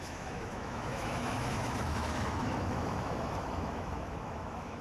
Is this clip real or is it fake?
fake